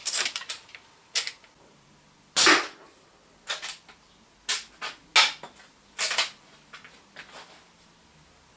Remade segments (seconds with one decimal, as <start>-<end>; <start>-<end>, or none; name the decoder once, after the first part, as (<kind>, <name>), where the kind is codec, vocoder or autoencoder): 0.0-1.1 (vocoder, BigVGAN v2)